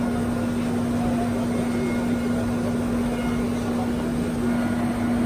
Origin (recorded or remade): recorded